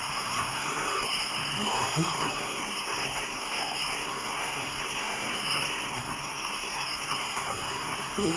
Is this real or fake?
fake